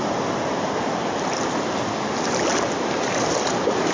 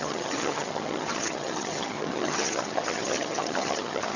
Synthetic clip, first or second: second